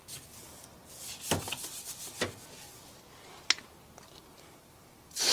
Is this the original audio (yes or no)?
yes